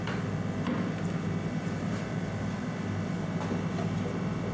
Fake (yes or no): no